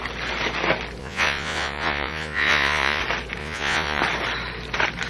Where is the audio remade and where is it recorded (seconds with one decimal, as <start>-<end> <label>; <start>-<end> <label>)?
0.0-1.0 recorded; 1.0-3.0 remade; 3.0-3.4 recorded; 3.4-4.0 remade; 4.0-5.1 recorded